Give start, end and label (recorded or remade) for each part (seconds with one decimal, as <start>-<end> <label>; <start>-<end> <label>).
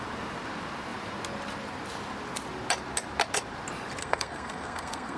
0.0-4.0 recorded; 4.0-5.2 remade